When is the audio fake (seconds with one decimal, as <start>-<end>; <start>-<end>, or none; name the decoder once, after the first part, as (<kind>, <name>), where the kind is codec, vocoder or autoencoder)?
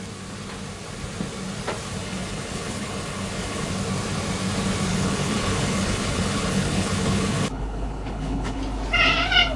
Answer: 2.0-3.8 (codec, HILCodec); 4.9-8.6